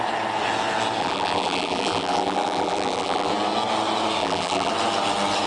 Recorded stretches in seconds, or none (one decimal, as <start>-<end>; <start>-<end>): 0.0-1.0; 3.3-4.2; 4.7-5.5